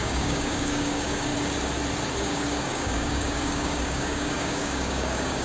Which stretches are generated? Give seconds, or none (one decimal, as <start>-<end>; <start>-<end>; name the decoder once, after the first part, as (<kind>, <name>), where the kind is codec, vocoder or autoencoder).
0.0-1.3 (codec, DAC); 2.2-5.4